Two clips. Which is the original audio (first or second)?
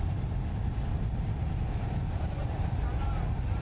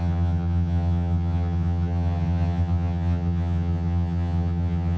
first